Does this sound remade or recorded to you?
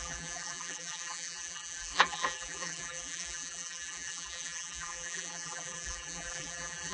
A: remade